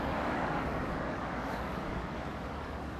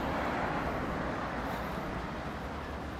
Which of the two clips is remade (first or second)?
first